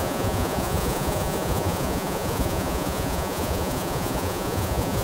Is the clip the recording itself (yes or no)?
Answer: no